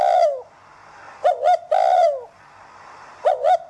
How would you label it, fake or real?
real